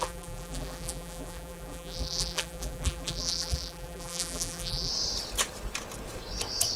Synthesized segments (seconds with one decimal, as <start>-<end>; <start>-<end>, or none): 0.0-4.9